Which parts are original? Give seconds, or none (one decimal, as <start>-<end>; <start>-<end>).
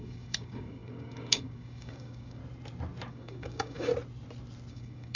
2.4-3.1; 3.9-4.7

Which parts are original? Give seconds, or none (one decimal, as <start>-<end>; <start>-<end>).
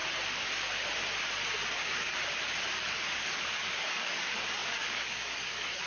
0.0-1.7; 2.1-2.9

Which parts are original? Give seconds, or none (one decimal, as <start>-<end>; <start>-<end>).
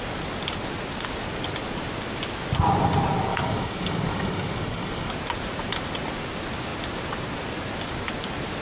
0.0-3.3; 5.1-8.6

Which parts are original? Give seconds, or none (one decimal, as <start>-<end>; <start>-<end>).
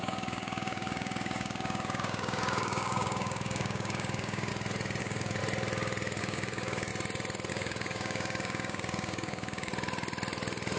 4.5-5.0; 5.4-6.2; 6.9-7.5; 9.7-10.8